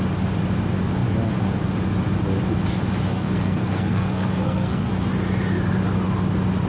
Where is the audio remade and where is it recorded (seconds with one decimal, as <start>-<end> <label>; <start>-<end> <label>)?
0.0-3.1 recorded; 3.1-4.9 remade; 4.9-6.7 recorded